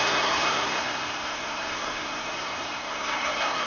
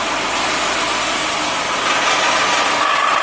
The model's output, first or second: first